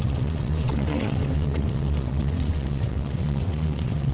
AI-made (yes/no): yes